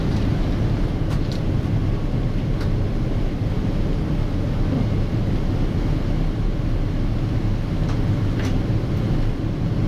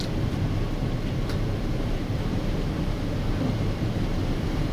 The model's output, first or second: second